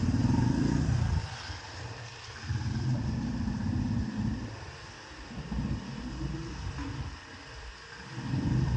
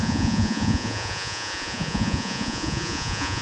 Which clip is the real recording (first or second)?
first